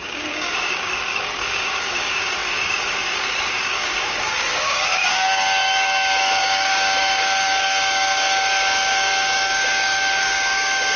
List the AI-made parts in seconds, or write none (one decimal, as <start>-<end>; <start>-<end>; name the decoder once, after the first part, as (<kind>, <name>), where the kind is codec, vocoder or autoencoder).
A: 0.0-11.0 (codec, DAC)